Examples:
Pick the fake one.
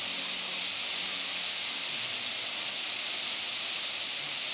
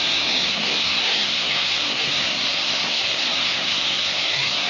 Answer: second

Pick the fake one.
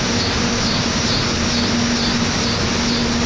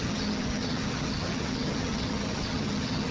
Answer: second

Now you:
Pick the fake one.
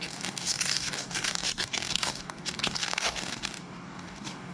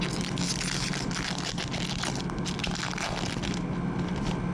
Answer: first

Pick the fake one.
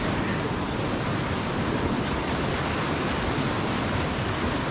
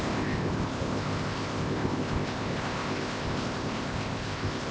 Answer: second